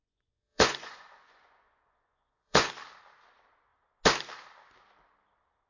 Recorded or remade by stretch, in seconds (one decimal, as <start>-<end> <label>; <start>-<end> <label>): 0.0-2.7 remade; 2.7-5.7 recorded